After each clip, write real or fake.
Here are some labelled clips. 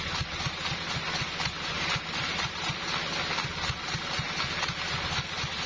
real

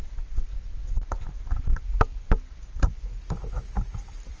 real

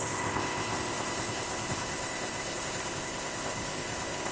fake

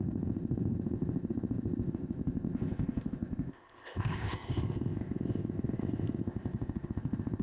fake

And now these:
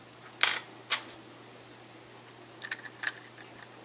real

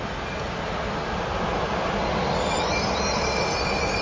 real